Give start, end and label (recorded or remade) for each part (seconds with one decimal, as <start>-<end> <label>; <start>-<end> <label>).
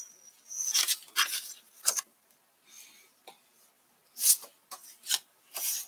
0.0-5.9 recorded